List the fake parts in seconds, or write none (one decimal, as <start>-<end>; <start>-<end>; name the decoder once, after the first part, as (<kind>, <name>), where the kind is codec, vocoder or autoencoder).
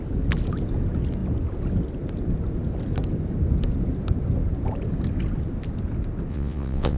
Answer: 6.3-7.0 (vocoder, WaveNeXt)